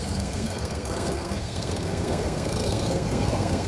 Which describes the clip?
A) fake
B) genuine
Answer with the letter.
A